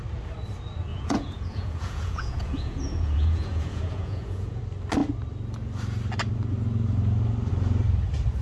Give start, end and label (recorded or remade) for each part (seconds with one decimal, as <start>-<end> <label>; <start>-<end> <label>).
0.0-0.9 recorded; 0.9-4.6 remade; 4.6-8.4 recorded